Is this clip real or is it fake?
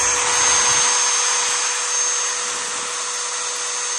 real